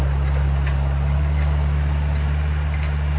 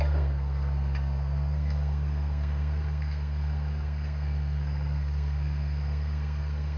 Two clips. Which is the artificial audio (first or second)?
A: second